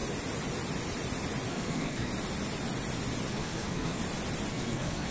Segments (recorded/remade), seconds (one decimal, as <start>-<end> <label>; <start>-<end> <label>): 0.0-1.5 recorded; 1.5-2.1 remade; 2.1-3.3 recorded; 3.3-4.0 remade; 4.0-4.5 recorded; 4.5-5.1 remade